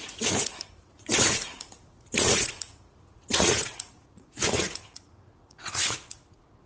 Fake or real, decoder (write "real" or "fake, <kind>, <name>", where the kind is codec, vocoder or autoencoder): fake, vocoder, Vocos